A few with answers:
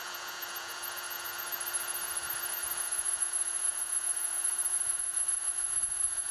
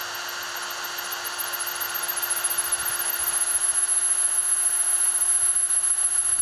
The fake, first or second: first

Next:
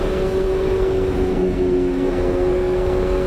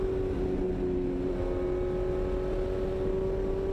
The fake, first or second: first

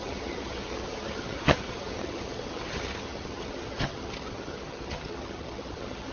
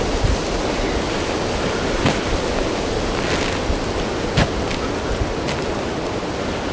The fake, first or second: first